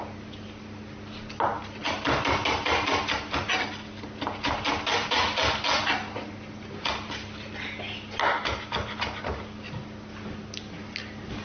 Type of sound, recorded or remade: recorded